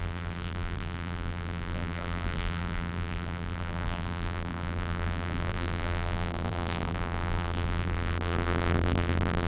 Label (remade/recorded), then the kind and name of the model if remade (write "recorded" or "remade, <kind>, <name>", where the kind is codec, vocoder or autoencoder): remade, vocoder, BigVGAN v2